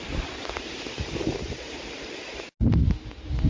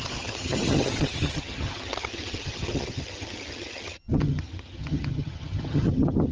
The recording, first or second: first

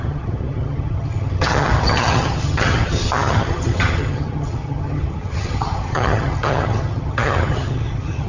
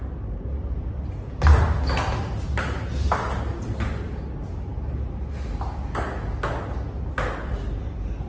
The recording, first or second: second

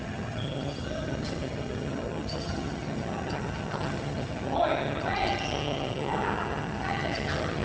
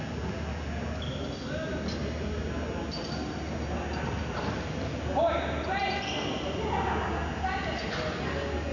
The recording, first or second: second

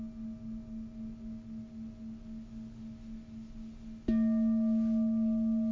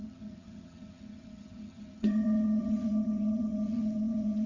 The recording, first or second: first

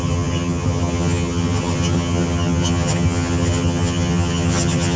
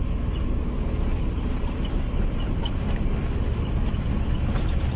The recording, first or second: second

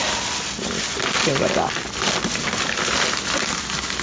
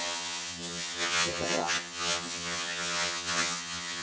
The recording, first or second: first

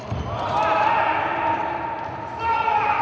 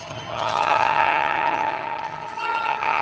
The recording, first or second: first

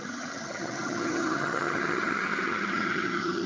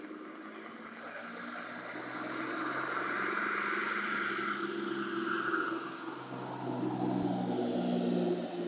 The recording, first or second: second